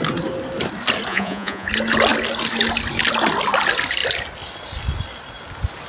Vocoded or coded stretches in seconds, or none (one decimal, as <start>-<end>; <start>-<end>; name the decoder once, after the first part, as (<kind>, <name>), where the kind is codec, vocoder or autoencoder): 1.1-1.7 (vocoder, Vocos)